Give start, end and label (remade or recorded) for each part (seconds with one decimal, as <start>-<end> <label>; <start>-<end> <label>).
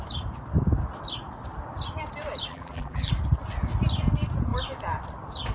0.0-2.5 recorded; 2.5-3.1 remade; 3.1-5.5 recorded